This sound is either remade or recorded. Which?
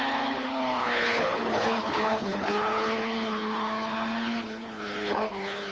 remade